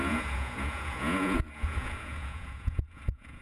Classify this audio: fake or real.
fake